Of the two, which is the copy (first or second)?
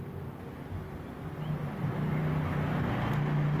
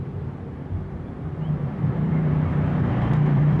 second